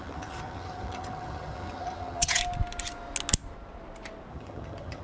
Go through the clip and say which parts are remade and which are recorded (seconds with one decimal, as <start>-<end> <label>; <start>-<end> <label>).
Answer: 0.0-2.4 remade; 2.4-4.3 recorded; 4.3-5.0 remade